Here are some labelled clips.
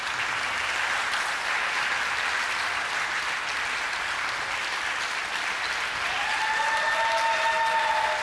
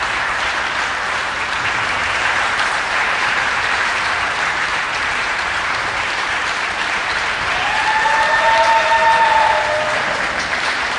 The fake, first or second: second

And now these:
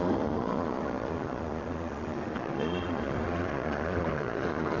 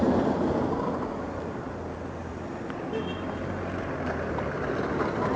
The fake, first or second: first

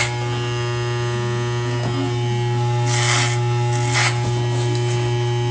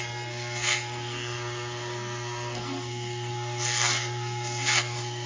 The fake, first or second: second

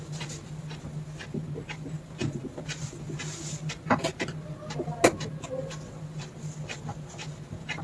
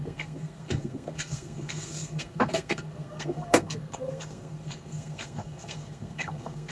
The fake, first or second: second